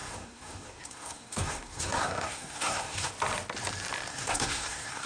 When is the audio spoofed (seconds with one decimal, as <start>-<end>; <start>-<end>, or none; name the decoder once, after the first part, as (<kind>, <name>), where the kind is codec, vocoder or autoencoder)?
0.0-3.1 (codec, SNAC); 4.1-5.1